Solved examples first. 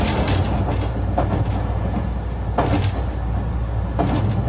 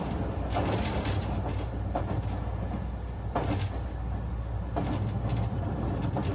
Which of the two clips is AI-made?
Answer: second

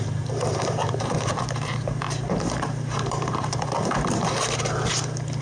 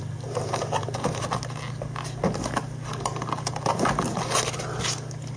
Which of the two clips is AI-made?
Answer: first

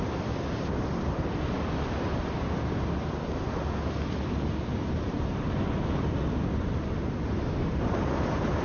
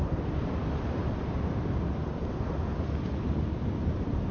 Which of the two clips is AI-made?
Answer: second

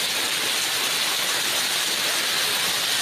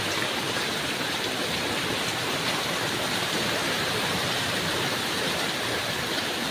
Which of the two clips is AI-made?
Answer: second